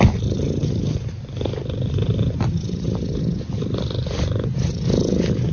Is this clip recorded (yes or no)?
no